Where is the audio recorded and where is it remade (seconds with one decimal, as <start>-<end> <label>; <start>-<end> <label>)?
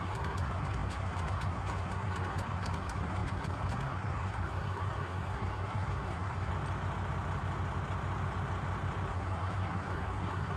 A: 0.0-6.5 remade; 6.5-9.1 recorded; 9.1-10.6 remade